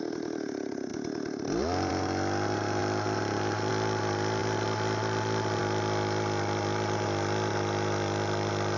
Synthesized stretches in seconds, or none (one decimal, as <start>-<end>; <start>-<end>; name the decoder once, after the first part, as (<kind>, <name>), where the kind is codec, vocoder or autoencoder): 2.8-3.7 (vocoder, BigVGAN v2); 4.4-5.6